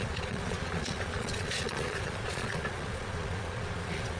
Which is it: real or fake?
fake